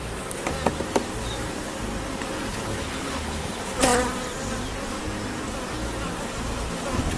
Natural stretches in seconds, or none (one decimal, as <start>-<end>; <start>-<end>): 0.0-2.5; 3.5-7.2